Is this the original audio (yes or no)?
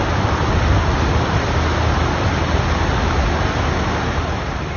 yes